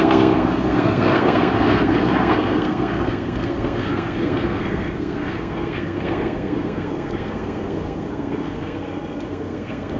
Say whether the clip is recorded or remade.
remade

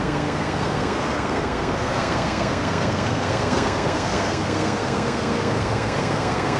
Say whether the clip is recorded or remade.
remade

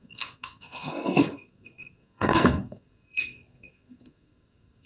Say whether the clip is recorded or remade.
remade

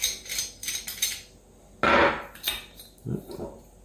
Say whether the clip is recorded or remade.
recorded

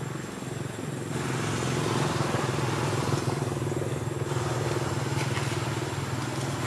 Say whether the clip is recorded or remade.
recorded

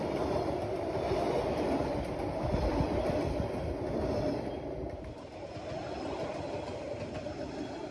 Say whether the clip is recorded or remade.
recorded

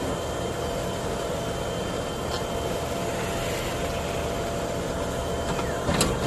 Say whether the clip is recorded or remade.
recorded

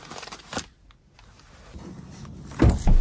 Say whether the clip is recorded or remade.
recorded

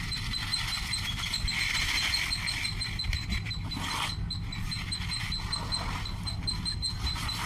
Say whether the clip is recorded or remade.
recorded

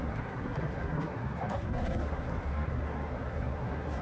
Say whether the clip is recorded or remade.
remade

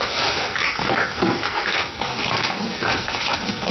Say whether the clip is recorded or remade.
remade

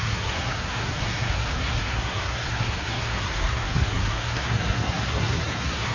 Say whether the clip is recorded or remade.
remade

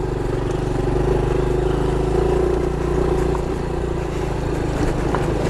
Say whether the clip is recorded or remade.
recorded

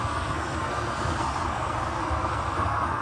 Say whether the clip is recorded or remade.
remade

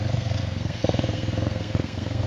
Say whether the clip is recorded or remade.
remade